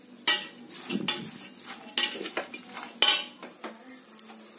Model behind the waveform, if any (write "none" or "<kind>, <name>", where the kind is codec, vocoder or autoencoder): none